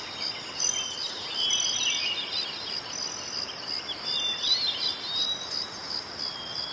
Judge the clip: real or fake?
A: real